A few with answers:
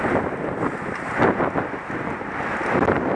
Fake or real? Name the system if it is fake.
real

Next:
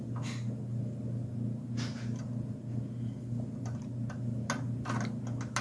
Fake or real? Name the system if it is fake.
real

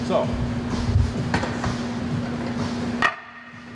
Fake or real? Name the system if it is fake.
real